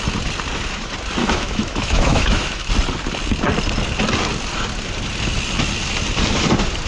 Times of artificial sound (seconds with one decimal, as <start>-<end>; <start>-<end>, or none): 1.2-2.7